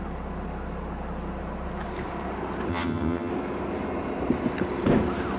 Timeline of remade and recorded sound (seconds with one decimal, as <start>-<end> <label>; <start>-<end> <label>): 0.0-2.7 recorded; 2.7-3.3 remade; 3.3-5.4 recorded